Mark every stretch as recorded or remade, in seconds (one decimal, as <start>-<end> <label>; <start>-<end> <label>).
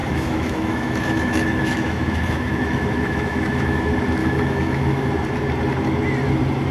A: 0.0-3.8 remade; 3.8-4.2 recorded; 4.2-5.1 remade; 5.1-6.7 recorded